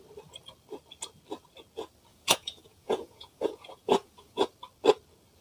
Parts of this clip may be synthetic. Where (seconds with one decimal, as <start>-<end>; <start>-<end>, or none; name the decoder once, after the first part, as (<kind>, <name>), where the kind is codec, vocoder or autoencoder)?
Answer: 2.1-4.5 (vocoder, Vocos)